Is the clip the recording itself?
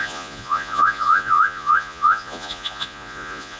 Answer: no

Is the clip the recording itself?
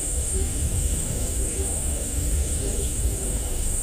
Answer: no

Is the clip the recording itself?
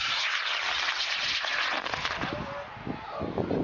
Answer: yes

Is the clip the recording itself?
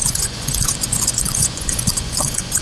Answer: no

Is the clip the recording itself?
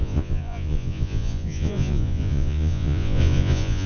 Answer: no